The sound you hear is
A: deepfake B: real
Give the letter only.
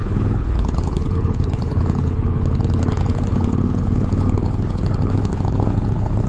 A